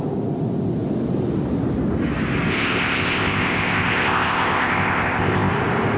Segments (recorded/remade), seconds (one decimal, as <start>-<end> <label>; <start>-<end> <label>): 0.0-2.5 recorded; 2.5-5.5 remade; 5.5-6.0 recorded